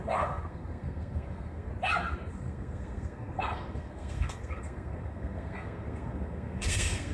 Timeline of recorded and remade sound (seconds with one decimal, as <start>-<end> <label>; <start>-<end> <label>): 0.0-1.7 remade; 1.7-2.3 recorded; 2.3-7.1 remade